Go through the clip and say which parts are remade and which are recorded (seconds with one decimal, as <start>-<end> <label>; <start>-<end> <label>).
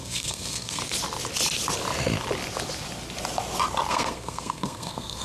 0.0-0.8 remade; 0.8-3.9 recorded; 3.9-5.2 remade